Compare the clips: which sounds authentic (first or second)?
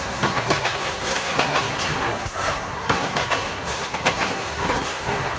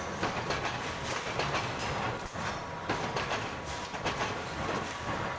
second